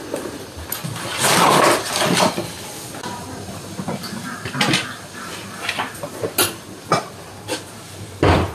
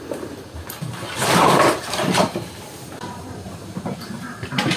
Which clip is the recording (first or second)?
first